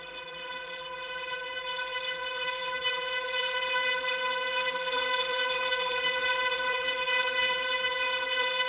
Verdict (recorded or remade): remade